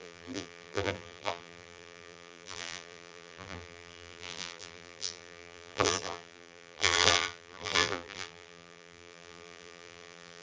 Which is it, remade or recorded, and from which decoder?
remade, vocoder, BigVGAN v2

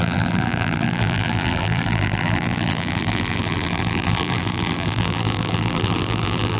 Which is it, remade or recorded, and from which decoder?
remade, vocoder, BigVGAN v2